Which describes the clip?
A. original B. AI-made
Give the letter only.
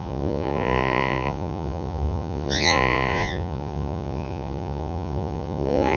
B